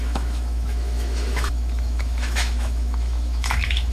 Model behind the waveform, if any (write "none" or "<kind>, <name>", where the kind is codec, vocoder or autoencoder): autoencoder, DAC-VAE